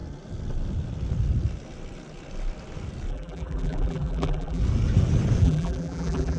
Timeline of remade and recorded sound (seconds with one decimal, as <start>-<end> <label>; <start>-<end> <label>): 0.0-3.1 recorded; 3.1-4.6 remade; 4.6-5.4 recorded; 5.4-6.4 remade